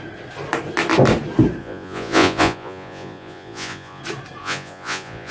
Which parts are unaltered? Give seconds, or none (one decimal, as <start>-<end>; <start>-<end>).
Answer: 0.0-1.6; 4.0-4.4